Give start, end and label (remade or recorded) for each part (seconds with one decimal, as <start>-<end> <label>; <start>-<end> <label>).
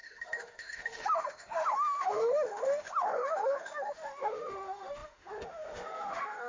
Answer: 0.0-6.5 remade